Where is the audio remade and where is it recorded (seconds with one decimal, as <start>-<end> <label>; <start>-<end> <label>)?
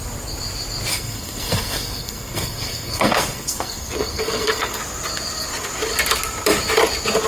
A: 0.0-0.9 recorded; 0.9-4.8 remade; 4.8-7.3 recorded